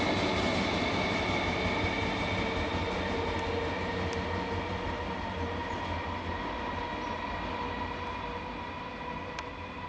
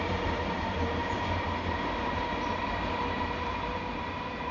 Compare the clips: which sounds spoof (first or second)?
second